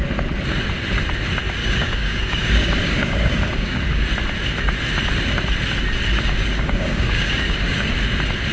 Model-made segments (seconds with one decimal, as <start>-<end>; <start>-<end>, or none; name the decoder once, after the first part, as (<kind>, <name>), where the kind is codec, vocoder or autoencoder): 1.6-4.1 (codec, DAC); 6.1-7.9